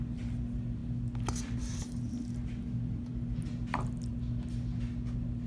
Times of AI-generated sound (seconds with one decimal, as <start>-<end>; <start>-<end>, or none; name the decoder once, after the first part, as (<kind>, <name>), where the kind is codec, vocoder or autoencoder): none